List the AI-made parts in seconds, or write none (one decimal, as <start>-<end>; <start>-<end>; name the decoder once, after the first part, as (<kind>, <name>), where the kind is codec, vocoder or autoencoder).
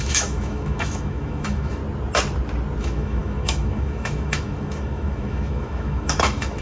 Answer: 0.0-1.8 (autoencoder, DAC-VAE); 2.8-6.6